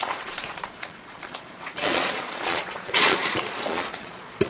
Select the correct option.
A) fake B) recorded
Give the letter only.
A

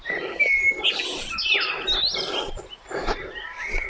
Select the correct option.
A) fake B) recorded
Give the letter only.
B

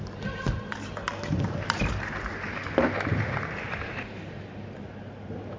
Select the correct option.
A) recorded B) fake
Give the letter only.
A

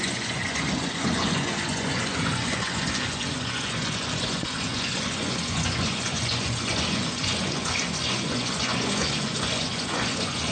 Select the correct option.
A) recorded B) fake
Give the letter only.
B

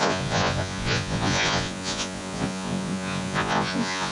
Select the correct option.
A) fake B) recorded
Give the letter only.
A